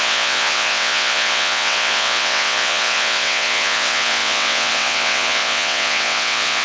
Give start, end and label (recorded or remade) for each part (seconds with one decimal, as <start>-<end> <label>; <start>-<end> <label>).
0.0-6.6 remade